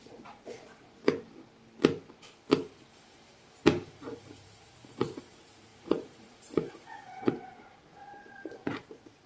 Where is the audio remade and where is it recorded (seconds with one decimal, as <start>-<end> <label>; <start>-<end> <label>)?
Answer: 0.0-1.0 remade; 1.0-4.0 recorded; 4.0-9.3 remade